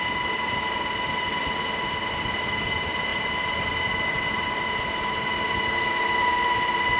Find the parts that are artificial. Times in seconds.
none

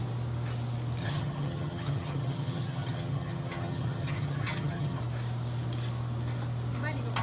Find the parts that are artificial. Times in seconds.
1.0-5.0 (vocoder, HiFi-GAN)

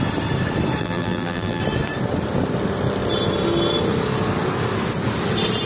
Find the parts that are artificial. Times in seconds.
0.8-1.6 (vocoder, BigVGAN v2)

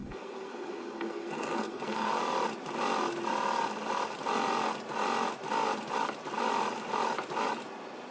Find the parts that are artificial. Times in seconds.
0.0-2.2 (codec, SNAC)

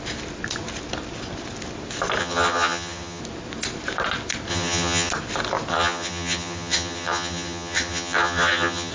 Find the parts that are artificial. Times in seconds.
2.2-3.2 (vocoder, HiFi-GAN); 4.5-5.1; 5.7-8.9

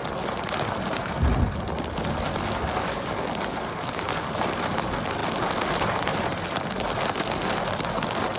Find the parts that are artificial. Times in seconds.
2.3-4.5 (codec, DAC)

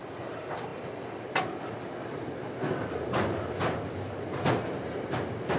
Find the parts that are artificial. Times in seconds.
none

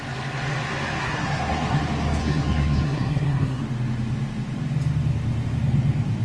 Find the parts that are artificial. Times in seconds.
1.0-1.8 (codec, SNAC); 2.2-3.6